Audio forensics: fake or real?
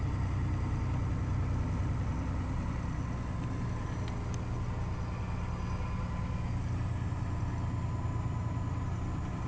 real